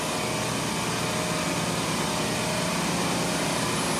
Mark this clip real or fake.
real